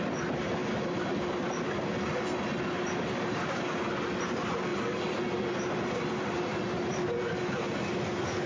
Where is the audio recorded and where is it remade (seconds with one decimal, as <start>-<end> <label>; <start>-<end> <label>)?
0.0-8.5 recorded